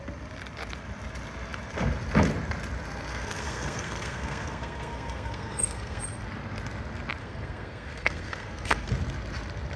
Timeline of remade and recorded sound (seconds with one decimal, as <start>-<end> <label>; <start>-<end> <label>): 0.0-3.1 recorded; 3.1-6.0 remade; 6.0-7.2 recorded; 7.2-8.9 remade; 8.9-9.8 recorded